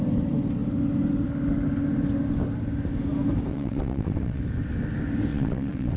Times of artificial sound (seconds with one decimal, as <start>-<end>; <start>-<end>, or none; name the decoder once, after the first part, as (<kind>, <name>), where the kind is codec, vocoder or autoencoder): 3.5-4.4 (vocoder, WaveNeXt); 5.3-6.0